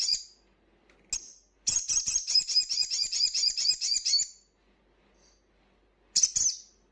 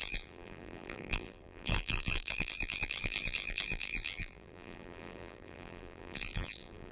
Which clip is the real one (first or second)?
first